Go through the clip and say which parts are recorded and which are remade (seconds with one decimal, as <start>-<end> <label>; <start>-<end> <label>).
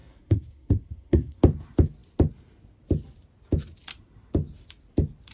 0.0-1.4 remade; 1.4-5.3 recorded